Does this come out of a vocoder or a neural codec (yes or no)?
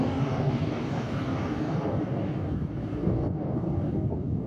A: yes